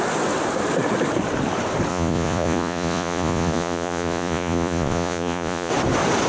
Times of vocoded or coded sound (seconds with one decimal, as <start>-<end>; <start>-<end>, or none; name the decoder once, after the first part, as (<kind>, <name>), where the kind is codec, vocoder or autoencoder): 1.9-5.7 (vocoder, Vocos)